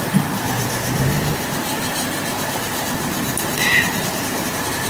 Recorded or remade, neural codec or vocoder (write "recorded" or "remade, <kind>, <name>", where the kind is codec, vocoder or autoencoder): recorded